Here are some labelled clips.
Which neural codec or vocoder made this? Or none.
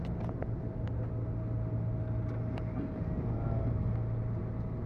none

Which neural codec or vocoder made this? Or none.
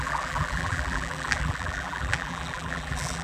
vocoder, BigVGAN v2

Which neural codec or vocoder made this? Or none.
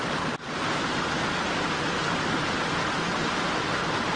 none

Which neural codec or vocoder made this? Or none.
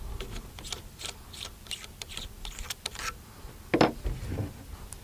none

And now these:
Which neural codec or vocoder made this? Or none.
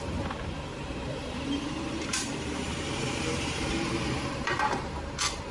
vocoder, BigVGAN v2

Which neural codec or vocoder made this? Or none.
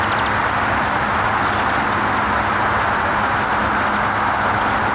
none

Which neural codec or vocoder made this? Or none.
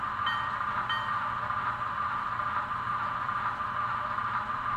none